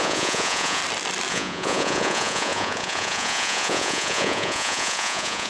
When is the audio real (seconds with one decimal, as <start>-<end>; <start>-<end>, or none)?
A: 0.8-1.3